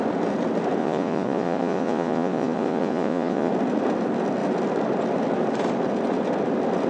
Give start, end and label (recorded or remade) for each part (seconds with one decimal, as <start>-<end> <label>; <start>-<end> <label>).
0.0-0.8 recorded; 0.8-3.5 remade; 3.5-6.9 recorded